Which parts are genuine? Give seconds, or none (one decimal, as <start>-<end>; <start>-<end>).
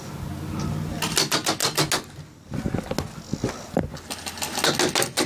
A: 0.0-5.3